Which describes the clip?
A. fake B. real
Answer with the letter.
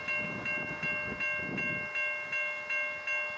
B